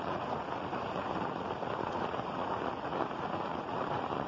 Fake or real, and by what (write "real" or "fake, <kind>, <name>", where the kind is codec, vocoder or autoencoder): fake, vocoder, Vocos